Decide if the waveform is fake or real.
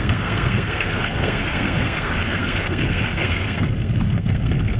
fake